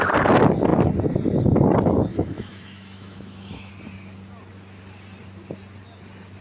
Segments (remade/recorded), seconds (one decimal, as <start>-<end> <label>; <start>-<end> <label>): 0.0-2.1 recorded; 2.1-3.7 remade; 3.7-6.4 recorded

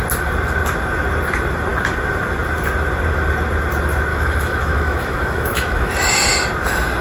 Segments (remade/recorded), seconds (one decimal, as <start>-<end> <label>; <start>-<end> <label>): 0.0-4.1 recorded; 4.1-5.9 remade; 5.9-7.0 recorded

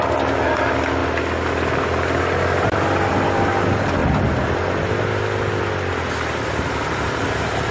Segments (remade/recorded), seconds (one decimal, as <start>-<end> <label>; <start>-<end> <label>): 0.0-7.7 recorded

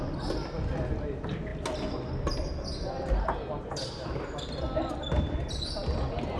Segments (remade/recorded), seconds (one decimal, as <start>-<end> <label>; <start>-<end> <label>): 0.0-6.4 recorded